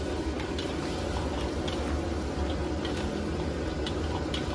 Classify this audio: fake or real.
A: real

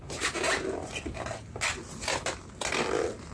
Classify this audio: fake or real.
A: real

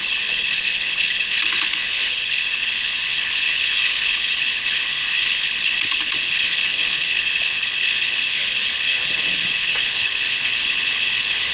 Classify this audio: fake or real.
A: fake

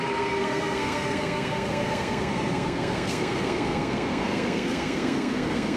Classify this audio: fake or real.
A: fake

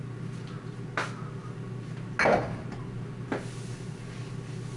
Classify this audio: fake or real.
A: real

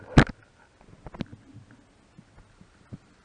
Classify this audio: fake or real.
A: real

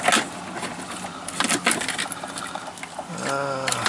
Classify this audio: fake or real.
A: real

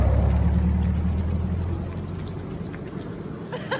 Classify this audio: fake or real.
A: real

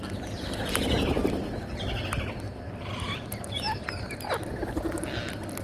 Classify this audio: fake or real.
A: real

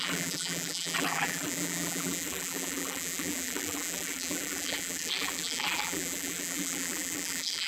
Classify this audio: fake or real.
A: fake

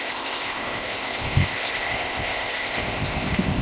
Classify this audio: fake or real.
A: fake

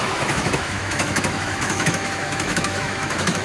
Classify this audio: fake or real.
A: fake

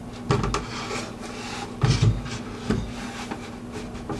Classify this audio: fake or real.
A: real